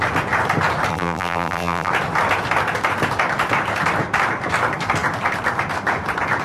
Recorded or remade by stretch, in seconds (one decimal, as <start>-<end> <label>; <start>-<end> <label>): 0.0-0.9 recorded; 0.9-1.9 remade; 1.9-6.4 recorded